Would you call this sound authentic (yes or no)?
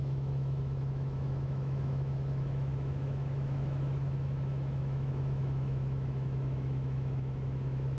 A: no